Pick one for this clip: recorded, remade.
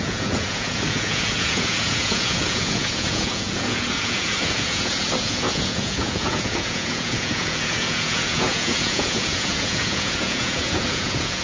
remade